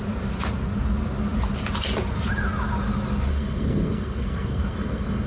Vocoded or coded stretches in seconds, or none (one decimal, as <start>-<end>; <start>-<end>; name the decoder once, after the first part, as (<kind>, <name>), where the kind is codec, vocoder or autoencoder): 3.3-5.3 (codec, SNAC)